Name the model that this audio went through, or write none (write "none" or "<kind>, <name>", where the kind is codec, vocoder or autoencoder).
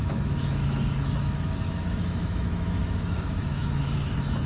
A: autoencoder, DAC-VAE